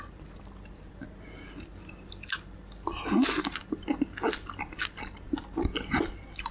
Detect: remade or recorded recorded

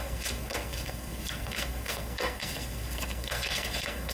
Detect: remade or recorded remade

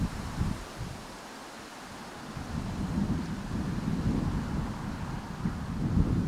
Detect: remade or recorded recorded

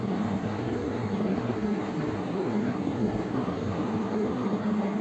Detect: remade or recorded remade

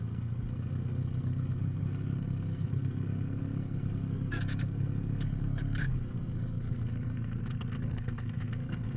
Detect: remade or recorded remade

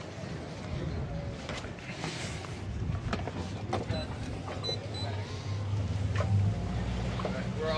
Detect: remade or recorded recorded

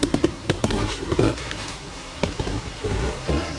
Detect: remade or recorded remade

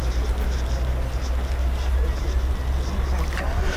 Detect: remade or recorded recorded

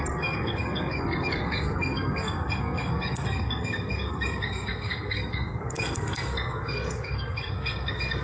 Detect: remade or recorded remade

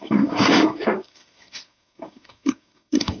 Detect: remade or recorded remade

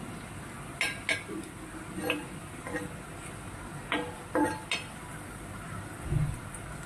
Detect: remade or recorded recorded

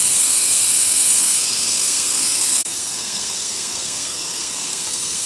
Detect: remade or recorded remade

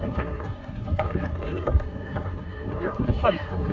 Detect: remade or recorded remade